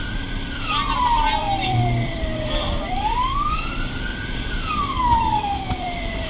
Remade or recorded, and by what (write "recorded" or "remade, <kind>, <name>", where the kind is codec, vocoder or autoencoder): remade, vocoder, BigVGAN v2